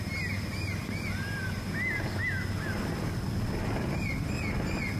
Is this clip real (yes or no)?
yes